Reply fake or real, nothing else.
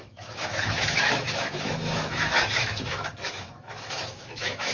fake